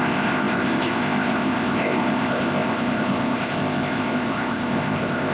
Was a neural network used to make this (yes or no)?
yes